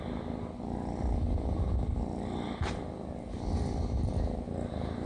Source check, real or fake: real